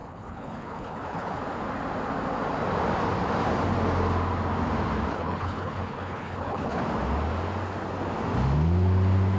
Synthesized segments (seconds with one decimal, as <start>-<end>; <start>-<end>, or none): 0.0-1.4; 5.1-6.8